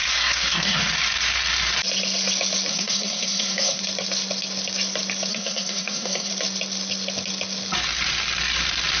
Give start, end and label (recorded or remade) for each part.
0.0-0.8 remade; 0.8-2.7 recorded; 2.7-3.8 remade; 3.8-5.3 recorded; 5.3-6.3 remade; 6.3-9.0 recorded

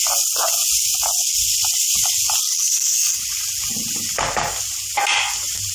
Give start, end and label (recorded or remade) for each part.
0.0-2.6 recorded; 2.6-3.2 remade; 3.2-5.7 recorded

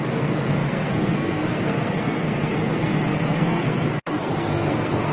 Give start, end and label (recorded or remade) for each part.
0.0-5.1 remade